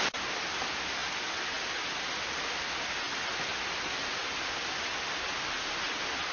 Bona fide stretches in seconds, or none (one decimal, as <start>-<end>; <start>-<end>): 0.0-6.3